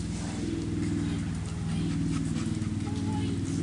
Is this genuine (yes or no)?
yes